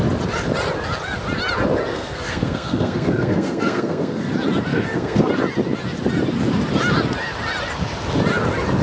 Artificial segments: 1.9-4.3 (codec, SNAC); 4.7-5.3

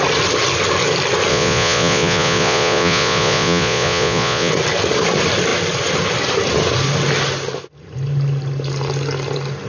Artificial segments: 1.3-4.5 (vocoder, Vocos)

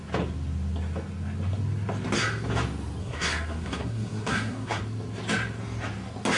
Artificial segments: 3.0-4.8 (codec, SNAC)

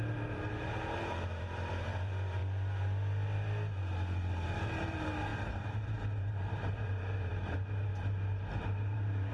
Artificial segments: 0.0-2.4 (vocoder, BigVGAN v2); 4.3-7.9; 8.6-9.3

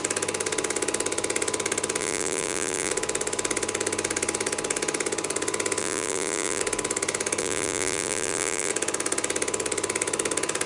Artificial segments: 2.0-2.9 (vocoder, BigVGAN v2); 5.8-6.6; 7.4-8.7

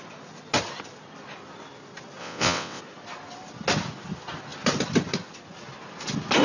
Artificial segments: 2.2-2.8 (vocoder, WaveNeXt)

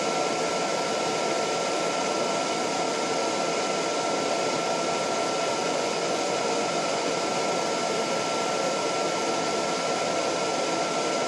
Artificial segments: 5.6-7.1 (vocoder, Vocos)